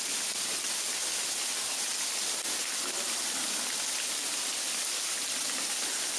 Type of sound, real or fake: real